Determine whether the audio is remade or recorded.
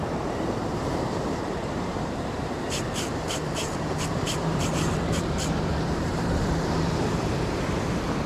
remade